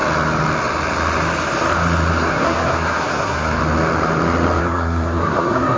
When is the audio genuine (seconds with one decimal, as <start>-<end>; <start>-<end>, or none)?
0.0-2.3; 3.6-4.6